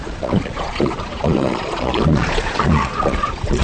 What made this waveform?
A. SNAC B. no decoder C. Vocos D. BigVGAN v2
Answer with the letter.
C